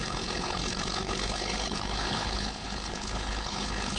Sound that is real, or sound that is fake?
fake